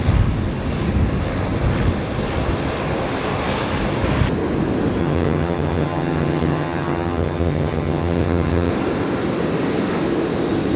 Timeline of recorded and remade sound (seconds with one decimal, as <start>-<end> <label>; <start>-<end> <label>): 0.0-5.0 recorded; 5.0-8.7 remade; 8.7-10.8 recorded